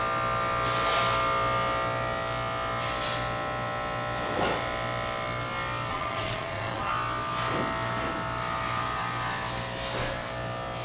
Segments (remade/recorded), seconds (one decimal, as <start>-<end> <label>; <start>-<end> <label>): 0.0-5.9 recorded; 5.9-6.9 remade; 6.9-10.8 recorded